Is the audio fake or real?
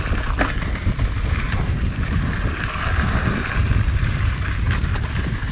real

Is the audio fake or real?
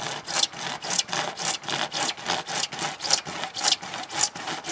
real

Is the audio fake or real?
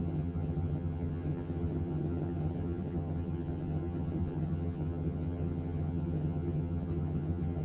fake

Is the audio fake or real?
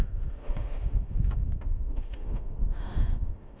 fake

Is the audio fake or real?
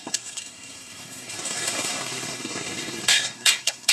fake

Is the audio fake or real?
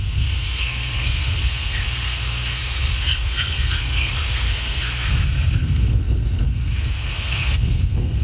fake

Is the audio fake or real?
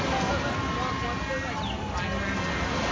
real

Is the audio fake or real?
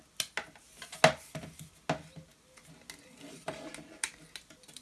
real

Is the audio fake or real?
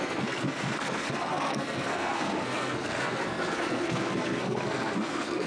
fake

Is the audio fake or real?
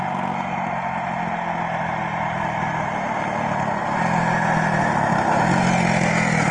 real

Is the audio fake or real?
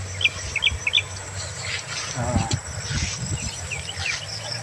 real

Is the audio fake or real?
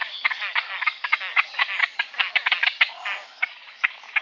fake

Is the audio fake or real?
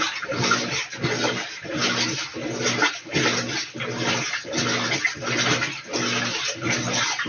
real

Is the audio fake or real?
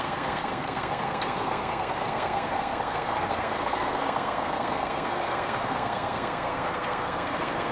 fake